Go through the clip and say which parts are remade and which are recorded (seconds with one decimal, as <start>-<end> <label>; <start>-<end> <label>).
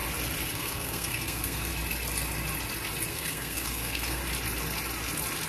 0.0-0.5 recorded; 0.5-1.7 remade; 1.7-3.1 recorded; 3.1-4.2 remade; 4.2-5.5 recorded